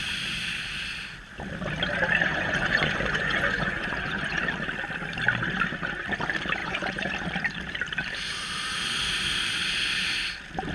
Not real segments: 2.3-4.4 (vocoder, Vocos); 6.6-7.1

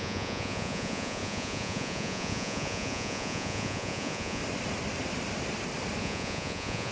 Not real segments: 0.0-4.4 (vocoder, Vocos); 6.0-6.9

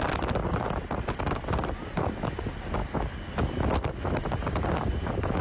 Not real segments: none

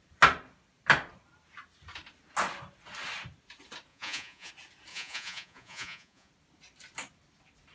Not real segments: 3.9-4.5 (vocoder, Vocos); 4.9-6.3